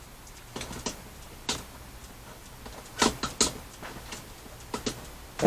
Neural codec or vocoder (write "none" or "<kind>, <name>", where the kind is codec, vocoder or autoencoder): none